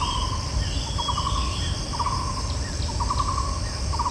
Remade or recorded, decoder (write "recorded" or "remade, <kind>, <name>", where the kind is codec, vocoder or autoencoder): remade, vocoder, BigVGAN v2